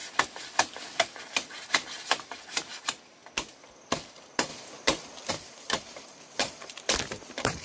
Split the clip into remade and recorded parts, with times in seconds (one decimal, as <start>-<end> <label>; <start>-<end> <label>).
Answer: 0.0-1.2 recorded; 1.2-3.2 remade; 3.2-4.1 recorded; 4.1-4.5 remade; 4.5-5.3 recorded; 5.3-7.6 remade